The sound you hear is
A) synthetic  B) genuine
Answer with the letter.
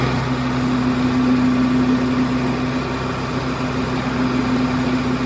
B